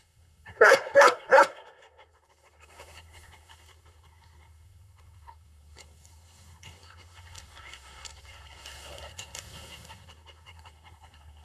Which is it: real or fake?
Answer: fake